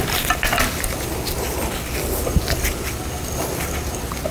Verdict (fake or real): real